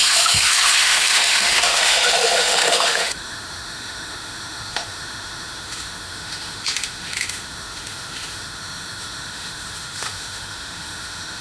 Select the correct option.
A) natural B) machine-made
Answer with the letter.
B